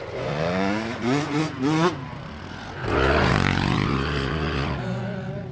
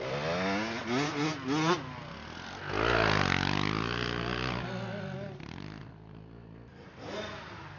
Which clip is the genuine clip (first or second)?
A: second